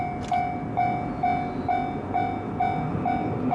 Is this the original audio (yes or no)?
yes